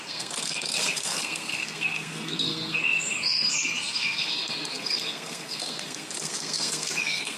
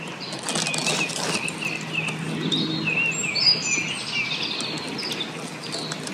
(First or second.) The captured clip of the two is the second